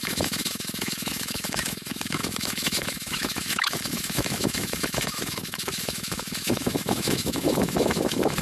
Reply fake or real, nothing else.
fake